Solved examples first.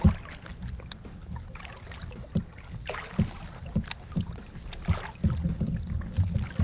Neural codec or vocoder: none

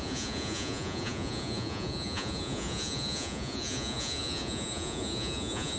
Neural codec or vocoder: vocoder, Vocos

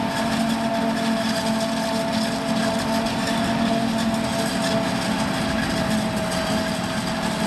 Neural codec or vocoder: none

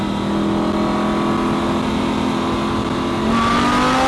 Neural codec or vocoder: none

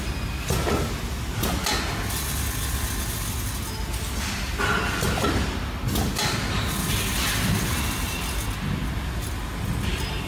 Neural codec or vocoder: none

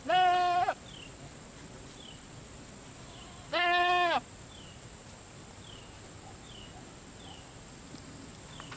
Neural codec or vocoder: none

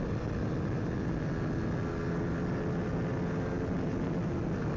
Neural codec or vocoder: none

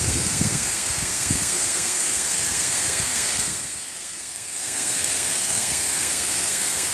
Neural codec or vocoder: codec, SNAC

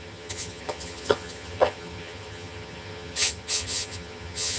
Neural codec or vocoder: vocoder, HiFi-GAN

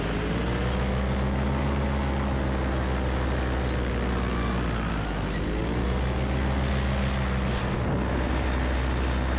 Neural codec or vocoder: none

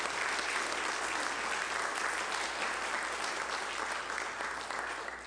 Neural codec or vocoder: none